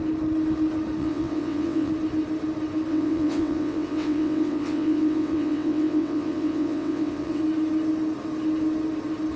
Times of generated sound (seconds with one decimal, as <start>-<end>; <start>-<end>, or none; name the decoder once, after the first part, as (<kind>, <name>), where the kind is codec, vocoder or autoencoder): 1.0-1.9 (vocoder, WaveNeXt); 2.9-7.4